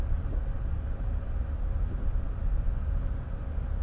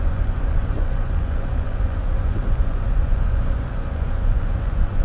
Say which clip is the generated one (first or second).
second